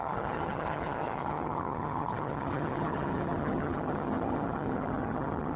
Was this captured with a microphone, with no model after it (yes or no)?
no